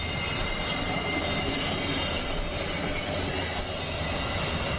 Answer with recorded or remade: recorded